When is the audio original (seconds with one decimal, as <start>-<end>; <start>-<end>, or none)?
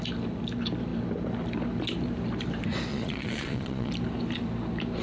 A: 0.0-2.9; 3.9-5.0